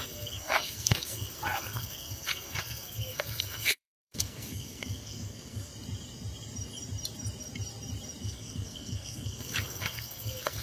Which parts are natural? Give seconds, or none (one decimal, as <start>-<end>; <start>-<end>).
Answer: 5.7-8.2